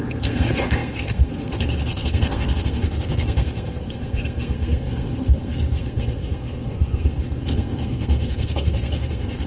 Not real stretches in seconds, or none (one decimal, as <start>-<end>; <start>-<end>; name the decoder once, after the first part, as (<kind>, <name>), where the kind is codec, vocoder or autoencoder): 0.0-9.5 (codec, SNAC)